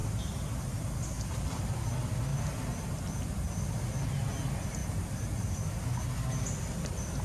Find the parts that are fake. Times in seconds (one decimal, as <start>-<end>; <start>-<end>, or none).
0.0-0.6; 4.8-5.9